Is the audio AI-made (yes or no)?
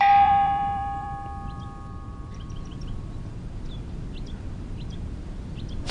yes